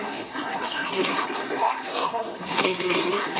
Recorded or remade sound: remade